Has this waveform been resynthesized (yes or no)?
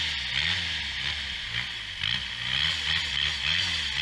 no